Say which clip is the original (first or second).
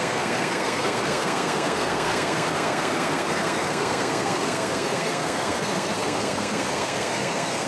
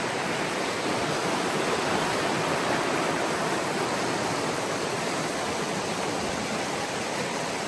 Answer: second